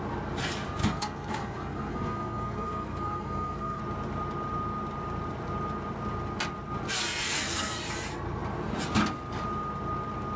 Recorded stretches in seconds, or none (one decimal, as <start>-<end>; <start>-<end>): 0.0-0.8; 3.8-7.2; 7.8-10.4